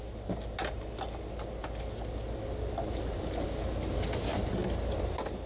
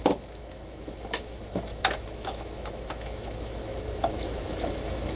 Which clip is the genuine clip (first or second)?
first